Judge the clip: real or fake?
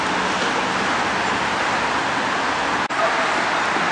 real